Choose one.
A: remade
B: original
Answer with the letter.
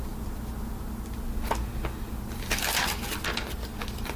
B